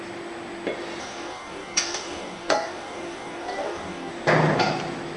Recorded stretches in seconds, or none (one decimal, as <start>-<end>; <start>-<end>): 0.0-1.0; 4.1-5.2